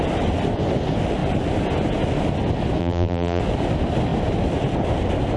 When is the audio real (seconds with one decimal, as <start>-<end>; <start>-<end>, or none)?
0.0-2.8; 3.4-5.4